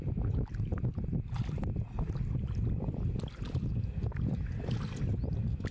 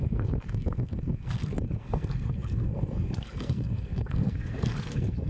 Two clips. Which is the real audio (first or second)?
first